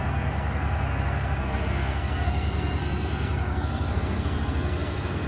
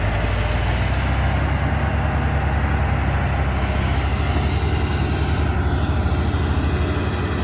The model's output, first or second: first